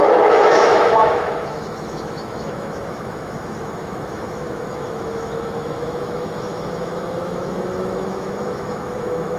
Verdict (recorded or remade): remade